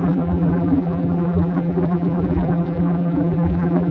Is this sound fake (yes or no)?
yes